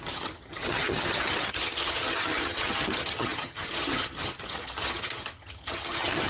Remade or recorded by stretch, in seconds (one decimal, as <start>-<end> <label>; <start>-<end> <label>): 0.0-6.3 remade